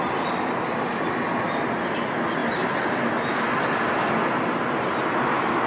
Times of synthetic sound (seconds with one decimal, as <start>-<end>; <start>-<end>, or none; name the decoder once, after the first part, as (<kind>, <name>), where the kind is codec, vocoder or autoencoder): none